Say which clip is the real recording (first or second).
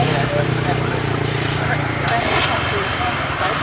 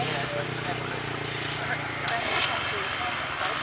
second